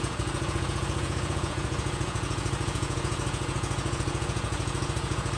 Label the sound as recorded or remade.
remade